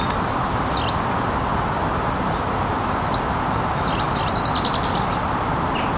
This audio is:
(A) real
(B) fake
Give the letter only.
A